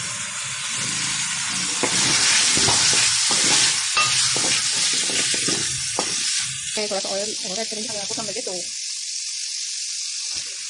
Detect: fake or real real